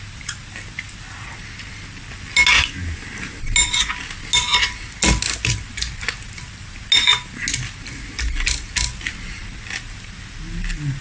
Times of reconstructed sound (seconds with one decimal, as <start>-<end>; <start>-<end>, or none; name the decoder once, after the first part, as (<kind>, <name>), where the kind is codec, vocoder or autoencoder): none